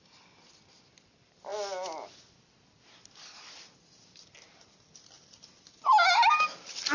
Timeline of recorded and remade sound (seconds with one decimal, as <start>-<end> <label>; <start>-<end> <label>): 0.0-6.9 recorded

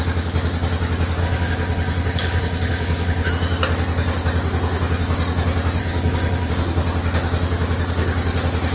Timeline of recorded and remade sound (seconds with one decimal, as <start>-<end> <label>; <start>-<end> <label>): 0.0-1.2 recorded; 1.2-3.3 remade; 3.3-5.8 recorded; 5.8-6.5 remade; 6.5-8.7 recorded

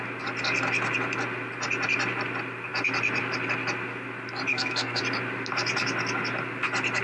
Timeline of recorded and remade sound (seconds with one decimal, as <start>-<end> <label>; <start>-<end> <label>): 0.0-4.5 recorded; 4.5-5.0 remade; 5.0-7.0 recorded

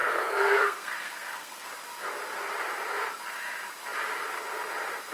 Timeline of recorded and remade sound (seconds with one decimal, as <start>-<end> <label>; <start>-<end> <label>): 0.0-1.7 remade; 1.7-5.1 recorded

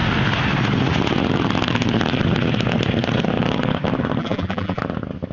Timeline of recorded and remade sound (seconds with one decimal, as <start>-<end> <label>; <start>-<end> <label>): 0.0-4.2 recorded; 4.2-4.8 remade; 4.8-5.3 recorded